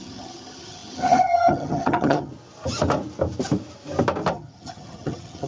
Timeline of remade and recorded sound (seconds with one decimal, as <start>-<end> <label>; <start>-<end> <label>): 0.0-2.3 remade; 2.3-4.3 recorded; 4.3-5.5 remade